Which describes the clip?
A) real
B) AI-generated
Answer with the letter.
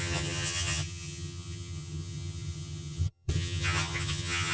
B